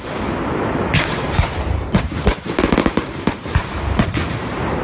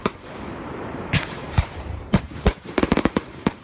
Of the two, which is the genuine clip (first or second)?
first